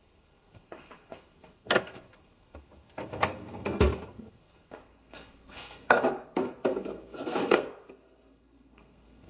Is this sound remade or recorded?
remade